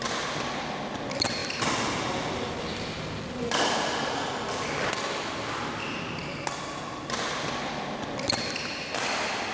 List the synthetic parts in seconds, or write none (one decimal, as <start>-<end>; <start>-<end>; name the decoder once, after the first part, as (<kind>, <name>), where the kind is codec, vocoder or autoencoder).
none